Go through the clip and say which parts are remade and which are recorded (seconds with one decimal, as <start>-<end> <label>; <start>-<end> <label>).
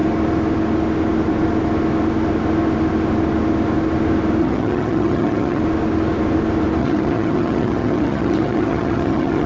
0.0-4.4 recorded; 4.4-5.6 remade; 5.6-6.8 recorded; 6.8-9.5 remade